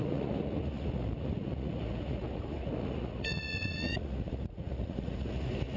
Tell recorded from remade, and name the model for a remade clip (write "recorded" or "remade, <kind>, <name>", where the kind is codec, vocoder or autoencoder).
remade, vocoder, Vocos